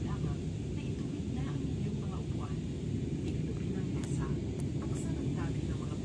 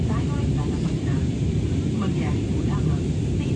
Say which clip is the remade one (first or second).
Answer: second